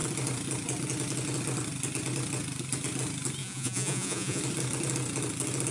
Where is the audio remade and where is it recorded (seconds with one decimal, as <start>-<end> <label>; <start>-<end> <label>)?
0.0-3.4 recorded; 3.4-4.4 remade; 4.4-5.7 recorded